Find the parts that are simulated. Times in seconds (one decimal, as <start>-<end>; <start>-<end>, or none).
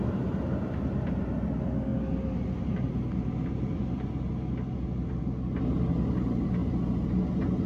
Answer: none